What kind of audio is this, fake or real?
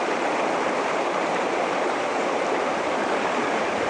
fake